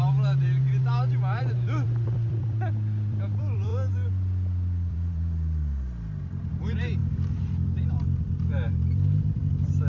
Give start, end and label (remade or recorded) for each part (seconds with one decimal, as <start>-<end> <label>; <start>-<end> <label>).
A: 0.0-3.7 remade; 3.7-4.9 recorded; 4.9-9.9 remade

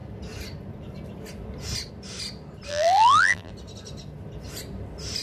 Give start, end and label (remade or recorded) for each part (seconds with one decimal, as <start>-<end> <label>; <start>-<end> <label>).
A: 0.0-2.7 recorded; 2.7-3.5 remade; 3.5-5.2 recorded